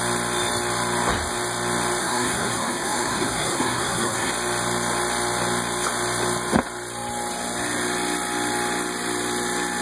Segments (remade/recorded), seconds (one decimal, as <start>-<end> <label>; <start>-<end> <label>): 0.0-2.0 recorded; 2.0-4.3 remade; 4.3-9.8 recorded